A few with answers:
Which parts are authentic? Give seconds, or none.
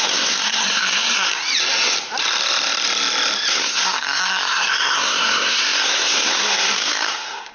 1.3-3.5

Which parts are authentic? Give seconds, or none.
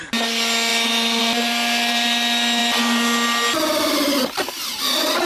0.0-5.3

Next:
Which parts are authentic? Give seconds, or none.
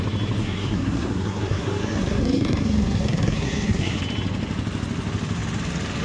0.0-0.4; 4.0-6.0